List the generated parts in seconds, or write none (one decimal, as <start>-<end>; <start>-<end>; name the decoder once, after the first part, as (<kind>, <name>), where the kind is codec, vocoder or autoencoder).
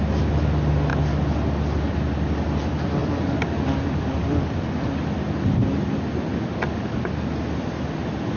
none